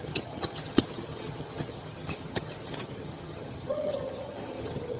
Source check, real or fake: fake